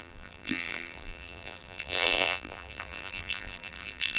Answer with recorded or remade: remade